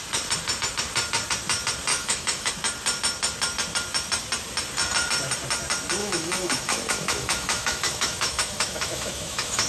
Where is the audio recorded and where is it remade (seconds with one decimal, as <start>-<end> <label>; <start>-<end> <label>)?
0.0-1.9 recorded; 1.9-2.5 remade; 2.5-6.0 recorded; 6.0-9.7 remade